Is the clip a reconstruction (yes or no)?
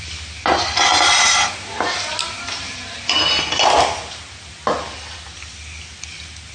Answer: no